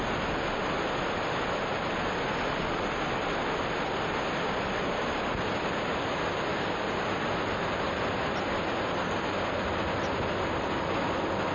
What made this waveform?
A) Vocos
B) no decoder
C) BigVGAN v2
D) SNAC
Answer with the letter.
B